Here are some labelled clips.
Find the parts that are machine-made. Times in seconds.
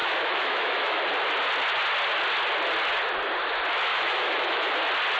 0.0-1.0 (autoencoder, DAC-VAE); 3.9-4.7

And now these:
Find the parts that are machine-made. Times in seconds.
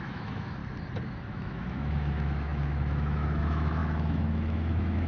0.0-0.6 (autoencoder, DAC-VAE); 1.3-5.1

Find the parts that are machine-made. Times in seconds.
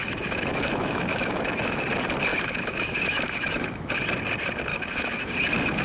0.0-1.8 (autoencoder, DAC-VAE); 2.3-3.9; 4.7-5.3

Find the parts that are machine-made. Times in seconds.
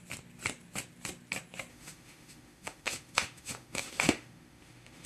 1.7-5.1 (autoencoder, DAC-VAE)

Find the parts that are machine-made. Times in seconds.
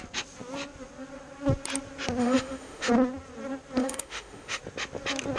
2.2-2.9 (autoencoder, DAC-VAE); 3.8-4.6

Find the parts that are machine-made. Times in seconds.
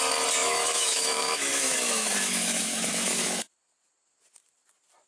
0.4-3.5 (autoencoder, DAC-VAE)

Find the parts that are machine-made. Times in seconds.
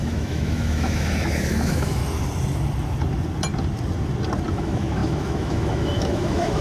0.0-2.0 (autoencoder, DAC-VAE); 4.5-6.6